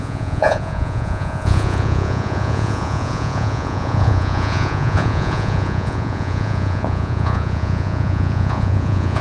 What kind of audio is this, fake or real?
fake